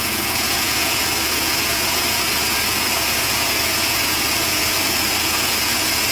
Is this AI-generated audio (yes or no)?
yes